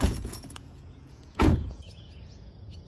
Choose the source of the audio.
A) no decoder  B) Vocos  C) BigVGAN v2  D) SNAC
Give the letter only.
B